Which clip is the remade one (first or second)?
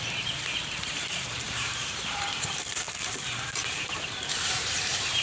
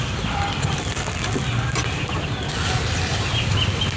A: first